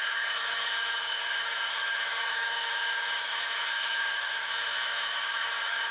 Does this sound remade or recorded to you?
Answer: remade